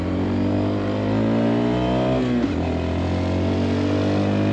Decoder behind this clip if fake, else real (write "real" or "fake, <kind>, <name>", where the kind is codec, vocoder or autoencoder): real